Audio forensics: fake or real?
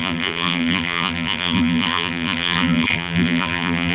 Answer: fake